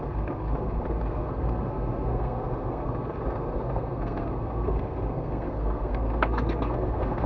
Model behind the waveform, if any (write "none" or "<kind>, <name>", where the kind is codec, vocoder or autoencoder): codec, SNAC